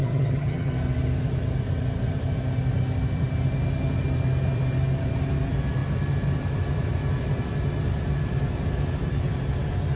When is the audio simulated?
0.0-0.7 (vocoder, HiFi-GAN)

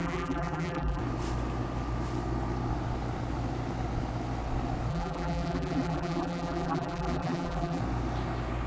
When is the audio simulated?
0.0-1.0 (vocoder, BigVGAN v2); 4.9-7.8

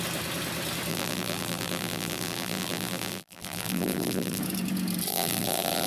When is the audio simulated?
0.9-4.4 (vocoder, BigVGAN v2); 5.1-5.9

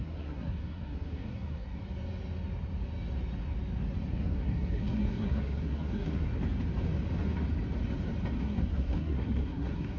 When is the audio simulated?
0.0-1.8 (codec, SNAC); 4.1-6.3; 8.4-10.0